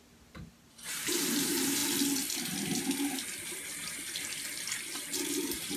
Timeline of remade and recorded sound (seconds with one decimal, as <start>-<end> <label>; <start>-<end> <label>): 0.0-1.8 remade; 1.8-5.3 recorded; 5.3-5.8 remade